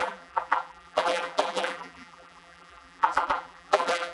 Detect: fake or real fake